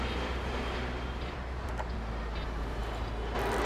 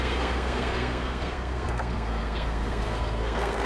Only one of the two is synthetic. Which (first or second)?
second